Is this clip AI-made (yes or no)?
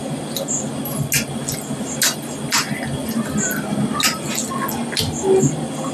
no